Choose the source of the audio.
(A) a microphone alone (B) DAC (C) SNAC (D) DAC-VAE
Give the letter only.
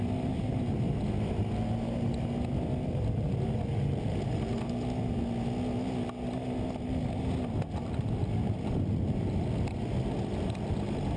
A